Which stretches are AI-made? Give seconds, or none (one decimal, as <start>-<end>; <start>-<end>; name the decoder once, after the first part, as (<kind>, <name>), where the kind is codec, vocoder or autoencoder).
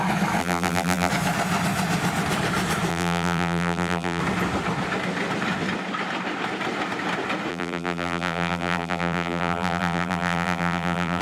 0.4-1.1 (vocoder, BigVGAN v2); 2.9-4.2; 7.5-11.2